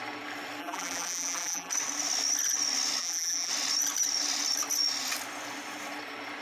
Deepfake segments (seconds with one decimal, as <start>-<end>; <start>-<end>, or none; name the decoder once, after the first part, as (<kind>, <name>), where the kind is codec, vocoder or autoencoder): 0.6-1.7 (vocoder, BigVGAN v2); 3.0-3.5